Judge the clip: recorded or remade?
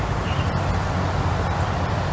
recorded